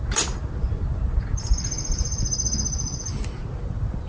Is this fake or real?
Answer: real